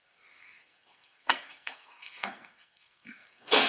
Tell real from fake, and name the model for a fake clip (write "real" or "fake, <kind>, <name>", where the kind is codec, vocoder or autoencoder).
fake, codec, SNAC